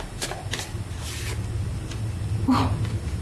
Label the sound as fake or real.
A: real